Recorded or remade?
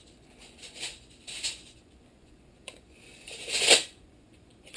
remade